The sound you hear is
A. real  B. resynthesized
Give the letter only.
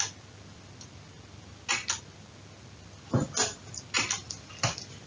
A